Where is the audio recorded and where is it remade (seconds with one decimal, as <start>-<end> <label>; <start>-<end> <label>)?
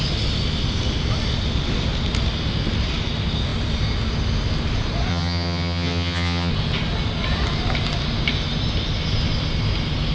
0.0-5.1 recorded; 5.1-6.5 remade; 6.5-10.1 recorded